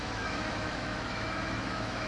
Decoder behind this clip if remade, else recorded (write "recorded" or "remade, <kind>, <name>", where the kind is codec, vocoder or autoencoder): remade, autoencoder, DAC-VAE